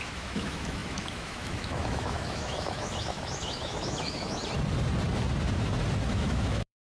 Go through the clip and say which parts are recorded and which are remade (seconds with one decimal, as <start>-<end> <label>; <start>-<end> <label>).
0.0-4.4 remade; 4.4-6.1 recorded; 6.1-6.8 remade